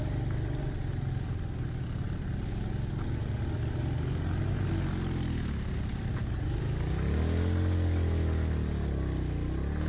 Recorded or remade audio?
recorded